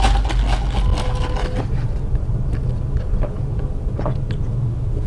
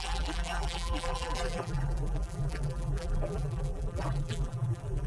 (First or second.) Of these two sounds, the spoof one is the second